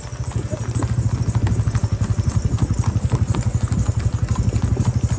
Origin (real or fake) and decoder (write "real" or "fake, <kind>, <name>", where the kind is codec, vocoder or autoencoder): real